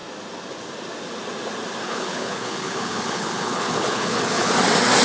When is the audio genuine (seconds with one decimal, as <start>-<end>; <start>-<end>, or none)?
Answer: 0.0-1.8; 4.5-5.0